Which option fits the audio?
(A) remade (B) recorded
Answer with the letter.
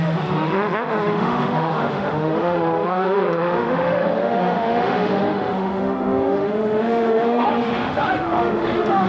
A